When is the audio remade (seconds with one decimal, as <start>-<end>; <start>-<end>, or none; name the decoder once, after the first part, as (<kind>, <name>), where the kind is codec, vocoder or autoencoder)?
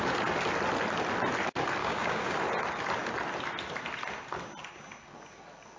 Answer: 1.8-2.4 (codec, DAC)